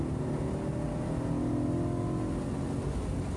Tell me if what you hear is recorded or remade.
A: recorded